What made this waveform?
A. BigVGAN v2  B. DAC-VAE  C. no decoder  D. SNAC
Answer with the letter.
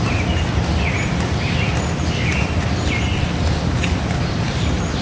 C